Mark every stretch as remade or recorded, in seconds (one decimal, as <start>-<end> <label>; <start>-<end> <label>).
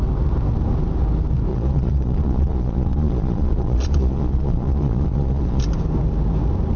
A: 0.0-1.5 recorded; 1.5-5.6 remade; 5.6-6.8 recorded